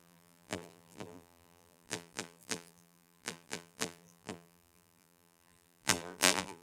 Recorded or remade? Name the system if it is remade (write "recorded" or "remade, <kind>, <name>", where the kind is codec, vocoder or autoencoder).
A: remade, vocoder, BigVGAN v2